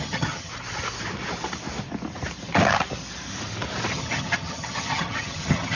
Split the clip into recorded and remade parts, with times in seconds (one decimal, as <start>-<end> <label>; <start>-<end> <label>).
0.0-0.5 remade; 0.5-3.9 recorded; 3.9-5.7 remade